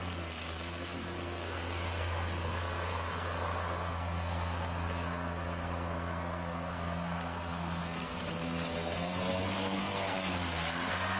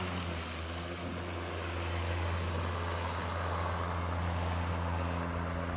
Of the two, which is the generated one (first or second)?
first